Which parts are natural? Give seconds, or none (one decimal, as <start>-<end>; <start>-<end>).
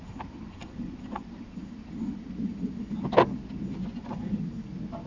0.0-0.6; 1.3-3.8; 4.4-5.1